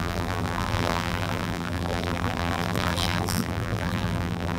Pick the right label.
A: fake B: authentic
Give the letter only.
A